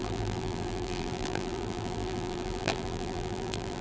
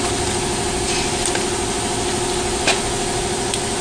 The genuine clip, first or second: second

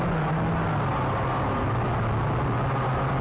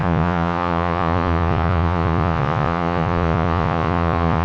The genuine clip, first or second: first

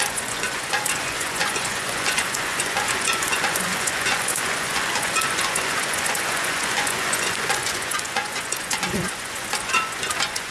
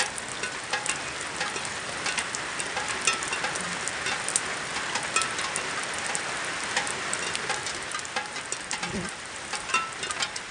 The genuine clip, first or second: second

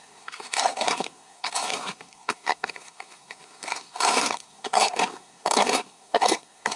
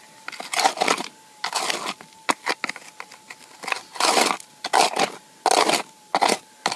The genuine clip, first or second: second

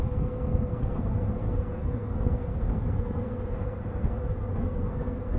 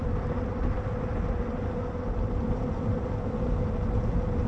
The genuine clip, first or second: second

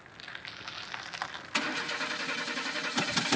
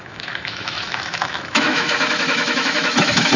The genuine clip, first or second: first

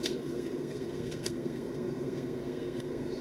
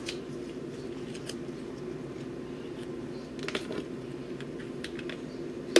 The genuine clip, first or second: second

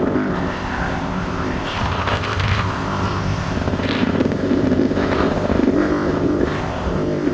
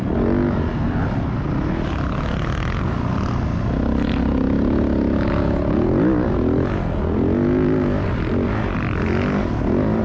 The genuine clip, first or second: second